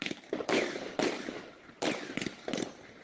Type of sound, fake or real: real